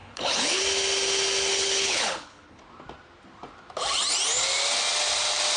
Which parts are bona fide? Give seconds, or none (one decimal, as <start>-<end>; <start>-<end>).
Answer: 0.6-1.5; 2.6-5.6